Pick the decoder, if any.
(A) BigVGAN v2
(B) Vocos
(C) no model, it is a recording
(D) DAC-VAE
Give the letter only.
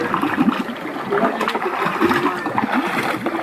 C